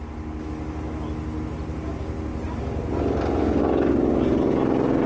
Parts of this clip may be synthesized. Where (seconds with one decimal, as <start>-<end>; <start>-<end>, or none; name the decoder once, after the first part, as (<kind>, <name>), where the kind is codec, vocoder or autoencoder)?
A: none